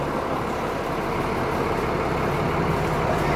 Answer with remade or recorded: recorded